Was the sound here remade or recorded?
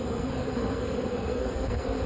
remade